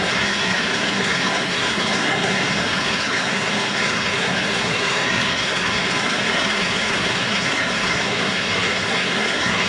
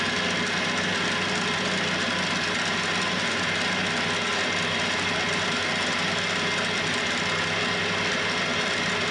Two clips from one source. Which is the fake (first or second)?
first